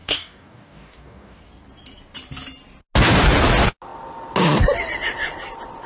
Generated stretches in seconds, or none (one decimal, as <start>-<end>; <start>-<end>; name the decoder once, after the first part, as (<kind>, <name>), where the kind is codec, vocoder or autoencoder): 0.0-1.4 (codec, DAC)